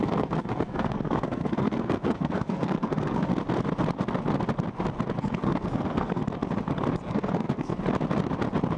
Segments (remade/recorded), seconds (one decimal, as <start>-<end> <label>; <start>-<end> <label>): 0.0-3.3 remade; 3.3-5.2 recorded; 5.2-6.2 remade; 6.2-7.1 recorded; 7.1-7.7 remade; 7.7-8.8 recorded

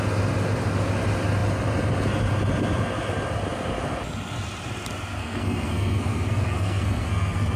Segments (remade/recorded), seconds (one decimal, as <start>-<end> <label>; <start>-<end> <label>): 0.0-5.2 recorded; 5.2-7.6 remade

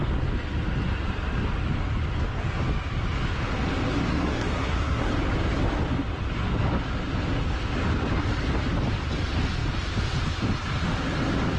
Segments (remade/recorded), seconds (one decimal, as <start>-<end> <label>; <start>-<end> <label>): 0.0-4.1 recorded; 4.1-5.1 remade; 5.1-11.6 recorded